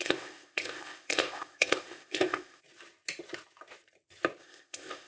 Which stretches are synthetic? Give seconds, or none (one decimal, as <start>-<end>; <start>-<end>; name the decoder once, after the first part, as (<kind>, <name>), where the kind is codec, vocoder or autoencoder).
0.0-2.6 (codec, ZipCodec); 4.4-5.1